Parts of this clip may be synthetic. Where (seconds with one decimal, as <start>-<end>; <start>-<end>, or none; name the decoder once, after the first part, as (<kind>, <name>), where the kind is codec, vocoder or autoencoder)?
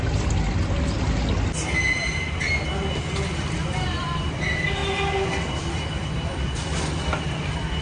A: none